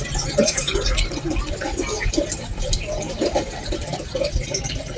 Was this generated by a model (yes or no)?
no